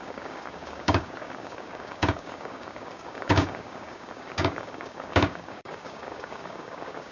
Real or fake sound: fake